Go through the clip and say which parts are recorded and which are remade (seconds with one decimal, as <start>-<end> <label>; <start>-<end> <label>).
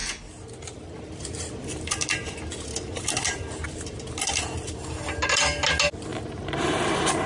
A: 0.0-7.3 recorded